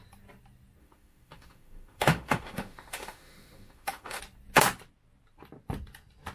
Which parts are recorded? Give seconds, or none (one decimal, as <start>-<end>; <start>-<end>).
0.0-0.8; 4.2-6.3